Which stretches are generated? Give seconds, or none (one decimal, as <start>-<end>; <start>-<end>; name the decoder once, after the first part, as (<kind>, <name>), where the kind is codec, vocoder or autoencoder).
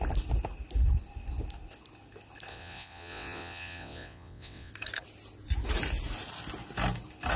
2.5-4.7 (vocoder, WaveNeXt)